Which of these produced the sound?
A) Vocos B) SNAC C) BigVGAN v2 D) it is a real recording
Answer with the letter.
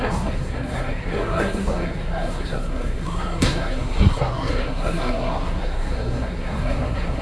B